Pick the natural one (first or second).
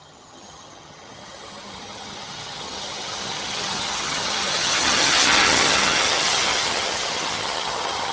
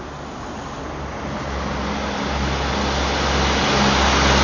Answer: second